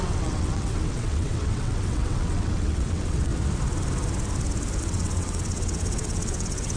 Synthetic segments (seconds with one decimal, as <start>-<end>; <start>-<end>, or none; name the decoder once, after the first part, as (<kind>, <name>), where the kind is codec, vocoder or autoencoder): 0.0-3.3 (vocoder, WaveNeXt); 4.8-6.8